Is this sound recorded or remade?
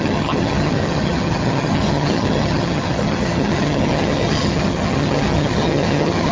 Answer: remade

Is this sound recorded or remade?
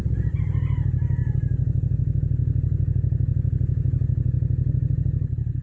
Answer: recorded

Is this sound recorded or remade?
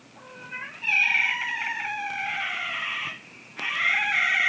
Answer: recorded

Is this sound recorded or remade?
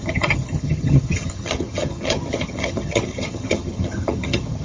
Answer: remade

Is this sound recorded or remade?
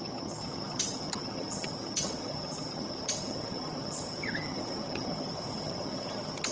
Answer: remade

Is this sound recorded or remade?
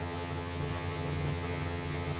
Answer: remade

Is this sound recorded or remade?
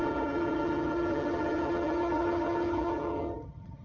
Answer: remade